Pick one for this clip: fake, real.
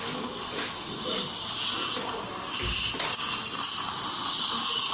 real